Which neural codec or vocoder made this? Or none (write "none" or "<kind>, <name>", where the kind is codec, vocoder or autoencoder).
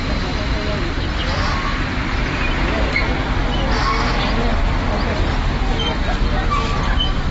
none